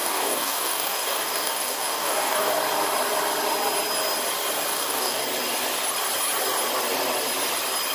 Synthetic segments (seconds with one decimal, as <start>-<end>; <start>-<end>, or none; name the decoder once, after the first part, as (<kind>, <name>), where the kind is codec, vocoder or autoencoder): 0.0-2.5 (codec, DAC); 4.7-5.2